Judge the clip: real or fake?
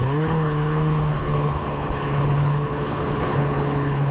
fake